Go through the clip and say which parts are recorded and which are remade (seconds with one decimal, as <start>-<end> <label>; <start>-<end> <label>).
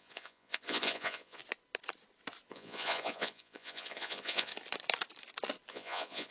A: 0.0-1.4 remade; 1.4-2.5 recorded; 2.5-4.5 remade; 4.5-5.7 recorded; 5.7-6.3 remade